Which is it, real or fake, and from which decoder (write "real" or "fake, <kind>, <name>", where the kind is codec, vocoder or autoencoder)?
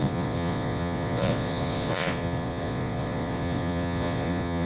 fake, vocoder, Vocos